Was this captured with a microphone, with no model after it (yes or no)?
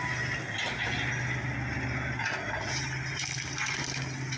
yes